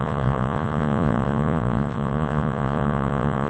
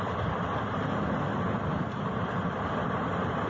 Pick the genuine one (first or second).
second